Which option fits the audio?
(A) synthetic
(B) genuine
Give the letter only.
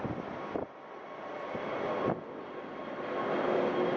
B